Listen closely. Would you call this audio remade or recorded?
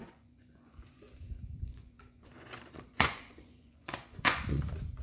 remade